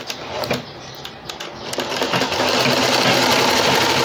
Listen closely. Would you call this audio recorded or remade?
recorded